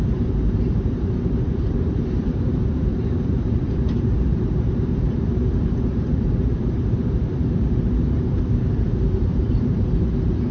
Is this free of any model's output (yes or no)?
no